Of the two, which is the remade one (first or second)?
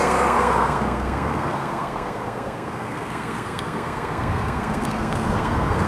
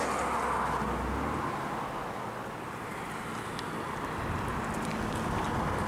first